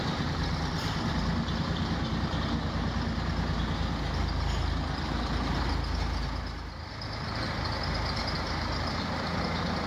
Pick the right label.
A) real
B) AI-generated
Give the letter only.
A